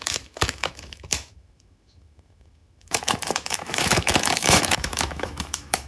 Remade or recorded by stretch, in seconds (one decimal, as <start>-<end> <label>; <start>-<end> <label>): 0.0-5.9 remade